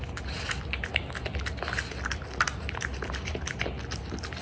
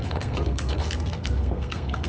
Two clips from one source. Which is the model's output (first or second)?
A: second